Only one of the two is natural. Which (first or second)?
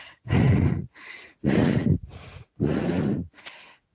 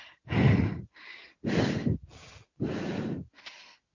second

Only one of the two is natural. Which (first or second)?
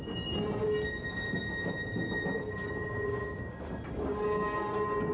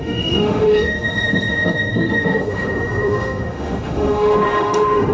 first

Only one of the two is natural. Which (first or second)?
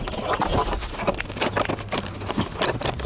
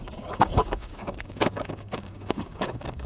first